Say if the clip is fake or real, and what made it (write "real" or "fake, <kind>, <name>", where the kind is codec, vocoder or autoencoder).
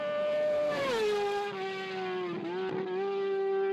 real